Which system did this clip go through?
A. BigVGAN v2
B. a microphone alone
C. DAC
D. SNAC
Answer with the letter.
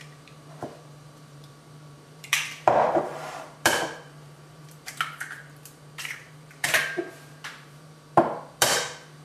A